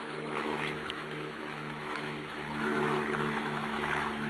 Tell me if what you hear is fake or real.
fake